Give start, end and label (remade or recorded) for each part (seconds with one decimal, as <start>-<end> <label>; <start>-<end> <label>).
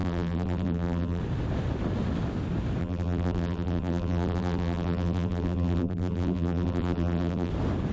0.0-1.2 remade; 1.2-2.8 recorded; 2.8-7.5 remade; 7.5-7.9 recorded